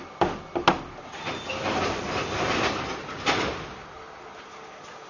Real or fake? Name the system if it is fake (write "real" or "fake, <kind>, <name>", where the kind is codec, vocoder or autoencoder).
real